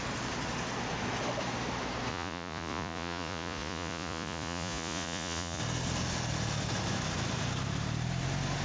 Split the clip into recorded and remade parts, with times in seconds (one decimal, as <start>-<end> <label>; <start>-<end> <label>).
0.0-2.1 recorded; 2.1-5.6 remade; 5.6-8.6 recorded

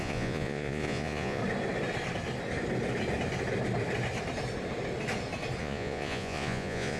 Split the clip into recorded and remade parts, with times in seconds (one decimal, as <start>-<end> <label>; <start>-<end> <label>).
0.0-1.4 remade; 1.4-5.6 recorded; 5.6-7.0 remade

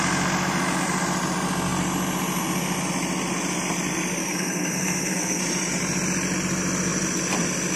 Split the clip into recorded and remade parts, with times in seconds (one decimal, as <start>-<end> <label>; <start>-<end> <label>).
0.0-4.2 recorded; 4.2-5.4 remade; 5.4-7.8 recorded